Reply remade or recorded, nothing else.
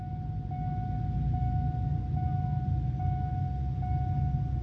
recorded